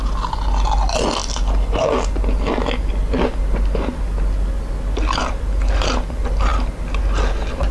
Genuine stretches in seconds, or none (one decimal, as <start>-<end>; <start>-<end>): 0.0-7.7